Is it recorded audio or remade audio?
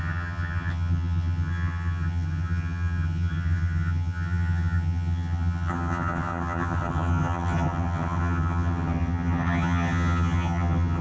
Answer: remade